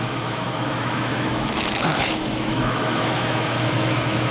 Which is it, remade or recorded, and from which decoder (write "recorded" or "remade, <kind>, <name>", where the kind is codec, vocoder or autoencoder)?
remade, autoencoder, DAC-VAE